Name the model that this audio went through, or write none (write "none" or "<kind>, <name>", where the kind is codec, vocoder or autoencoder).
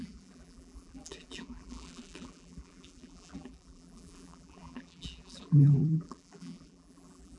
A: vocoder, BigVGAN v2